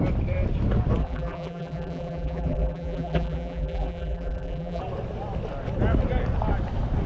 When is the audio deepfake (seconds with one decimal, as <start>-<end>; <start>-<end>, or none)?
1.0-4.8